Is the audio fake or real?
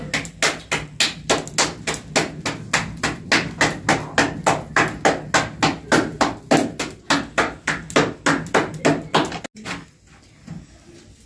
real